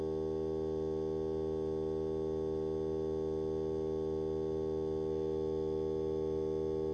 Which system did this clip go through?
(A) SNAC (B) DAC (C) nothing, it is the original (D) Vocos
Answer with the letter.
C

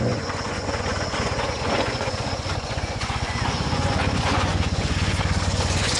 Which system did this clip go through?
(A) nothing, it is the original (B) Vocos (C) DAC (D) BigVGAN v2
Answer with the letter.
B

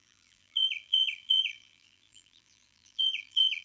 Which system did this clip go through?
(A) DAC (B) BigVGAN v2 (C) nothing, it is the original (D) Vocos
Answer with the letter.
B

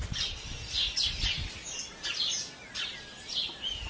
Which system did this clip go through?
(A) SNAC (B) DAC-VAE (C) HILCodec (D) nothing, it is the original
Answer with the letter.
D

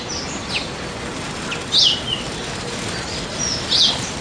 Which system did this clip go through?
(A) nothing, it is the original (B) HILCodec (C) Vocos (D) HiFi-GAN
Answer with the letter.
A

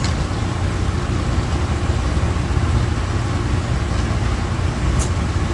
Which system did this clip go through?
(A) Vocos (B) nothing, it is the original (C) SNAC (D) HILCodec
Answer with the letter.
B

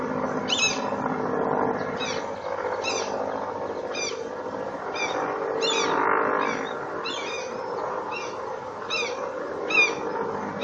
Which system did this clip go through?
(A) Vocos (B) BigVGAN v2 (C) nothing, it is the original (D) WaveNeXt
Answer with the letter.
C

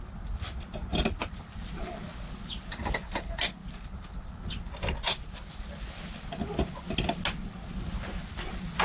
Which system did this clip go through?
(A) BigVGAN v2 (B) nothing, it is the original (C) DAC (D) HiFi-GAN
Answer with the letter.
B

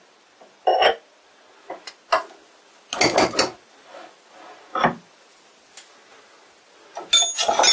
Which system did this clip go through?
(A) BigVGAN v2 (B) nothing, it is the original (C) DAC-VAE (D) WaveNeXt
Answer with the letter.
B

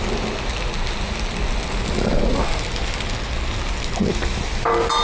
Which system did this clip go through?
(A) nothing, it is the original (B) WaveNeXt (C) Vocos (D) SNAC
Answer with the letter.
A